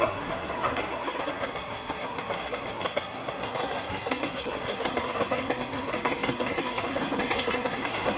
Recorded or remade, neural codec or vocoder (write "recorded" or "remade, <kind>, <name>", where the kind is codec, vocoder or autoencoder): remade, codec, SNAC